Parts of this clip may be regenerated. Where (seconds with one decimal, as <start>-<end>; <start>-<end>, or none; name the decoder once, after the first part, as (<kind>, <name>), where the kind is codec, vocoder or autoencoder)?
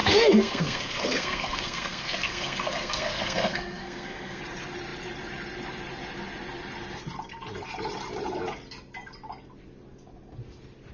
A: 0.0-4.4 (codec, SNAC)